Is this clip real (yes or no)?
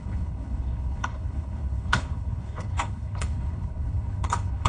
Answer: no